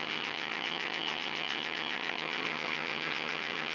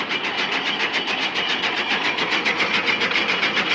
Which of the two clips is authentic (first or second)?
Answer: second